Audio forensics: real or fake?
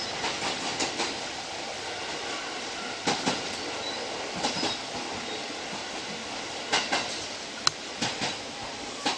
real